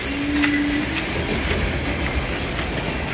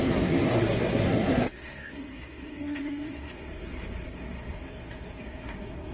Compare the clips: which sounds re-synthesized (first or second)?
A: second